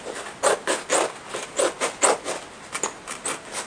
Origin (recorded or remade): recorded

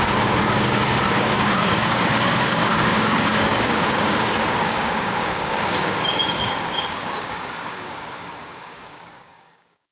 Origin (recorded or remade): remade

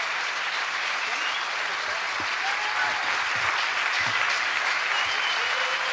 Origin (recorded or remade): recorded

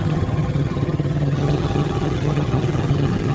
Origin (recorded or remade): remade